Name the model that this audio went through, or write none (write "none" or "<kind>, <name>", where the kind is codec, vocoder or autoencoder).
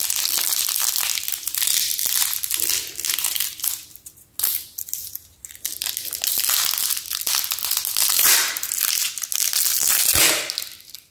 none